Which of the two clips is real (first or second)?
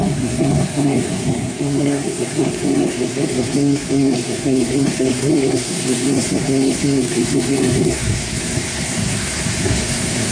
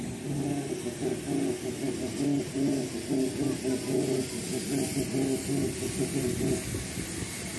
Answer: second